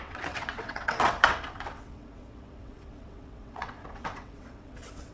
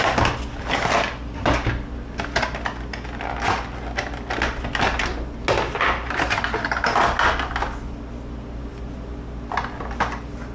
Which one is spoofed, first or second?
first